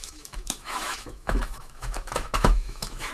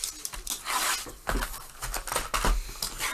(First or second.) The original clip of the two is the second